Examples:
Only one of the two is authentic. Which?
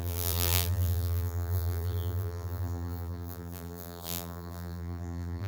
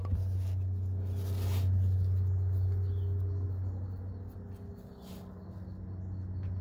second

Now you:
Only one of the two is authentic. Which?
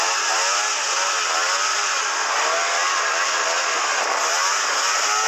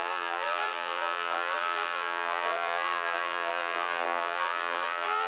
first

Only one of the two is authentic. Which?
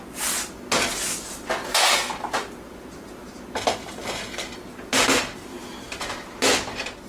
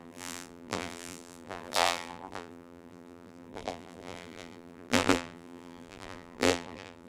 first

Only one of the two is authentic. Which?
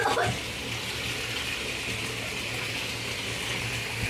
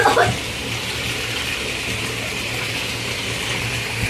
first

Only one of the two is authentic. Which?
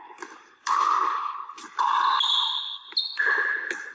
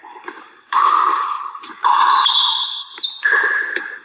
first